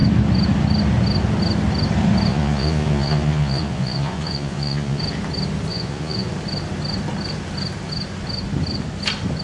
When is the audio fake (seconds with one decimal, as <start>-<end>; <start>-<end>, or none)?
2.3-5.0; 5.7-6.3